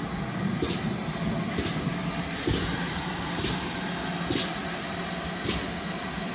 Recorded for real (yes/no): yes